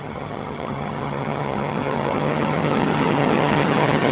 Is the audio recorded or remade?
remade